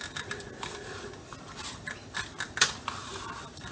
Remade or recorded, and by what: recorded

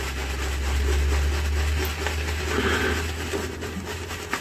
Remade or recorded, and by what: recorded